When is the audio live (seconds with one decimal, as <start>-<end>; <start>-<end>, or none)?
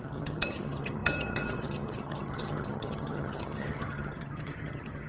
none